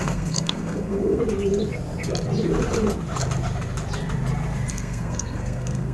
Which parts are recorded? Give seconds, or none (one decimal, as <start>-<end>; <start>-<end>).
1.2-4.7